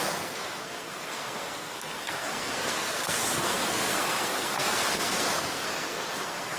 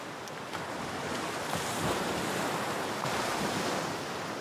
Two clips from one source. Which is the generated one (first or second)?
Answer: first